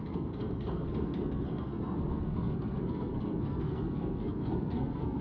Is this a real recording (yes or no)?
no